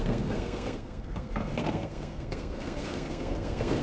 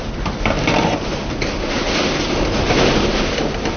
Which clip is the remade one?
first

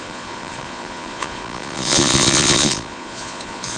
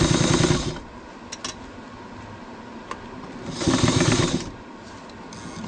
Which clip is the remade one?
first